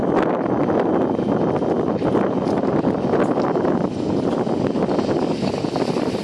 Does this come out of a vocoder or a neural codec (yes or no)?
no